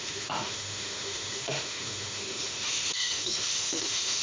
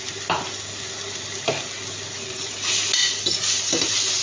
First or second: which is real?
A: second